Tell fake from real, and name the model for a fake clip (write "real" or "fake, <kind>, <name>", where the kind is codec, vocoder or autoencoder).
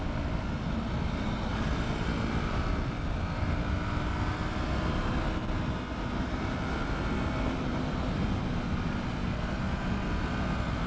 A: real